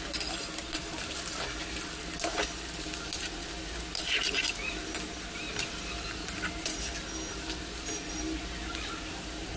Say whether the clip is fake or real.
real